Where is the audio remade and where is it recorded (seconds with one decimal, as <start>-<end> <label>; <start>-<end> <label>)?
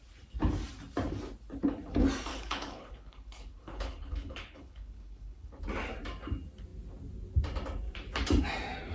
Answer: 0.0-2.3 recorded; 2.3-5.6 remade; 5.6-8.9 recorded